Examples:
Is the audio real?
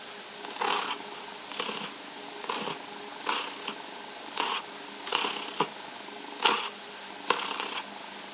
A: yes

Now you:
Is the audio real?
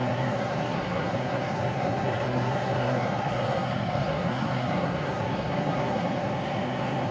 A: no